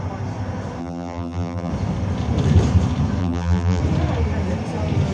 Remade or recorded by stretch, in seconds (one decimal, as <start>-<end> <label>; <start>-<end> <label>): 0.0-0.8 recorded; 0.8-1.7 remade; 1.7-3.2 recorded; 3.2-3.8 remade; 3.8-5.1 recorded